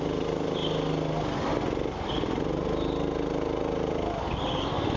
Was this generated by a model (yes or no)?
no